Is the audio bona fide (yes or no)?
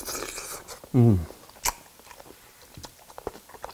yes